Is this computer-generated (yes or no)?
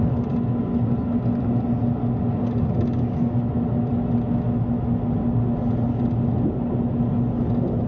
no